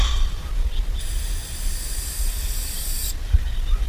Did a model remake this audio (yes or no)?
no